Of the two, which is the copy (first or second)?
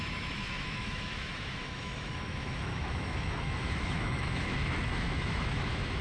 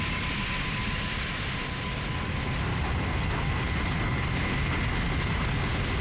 first